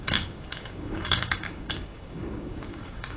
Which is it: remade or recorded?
remade